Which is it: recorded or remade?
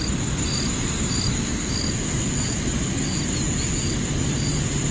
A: recorded